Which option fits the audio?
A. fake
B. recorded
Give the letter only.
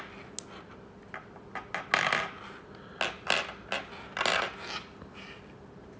B